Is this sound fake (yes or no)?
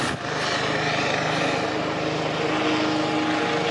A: no